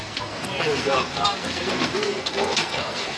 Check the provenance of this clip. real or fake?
fake